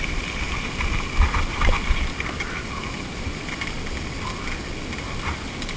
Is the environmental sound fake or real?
real